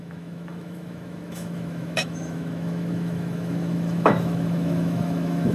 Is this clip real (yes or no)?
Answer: no